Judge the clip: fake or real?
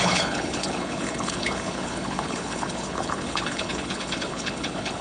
fake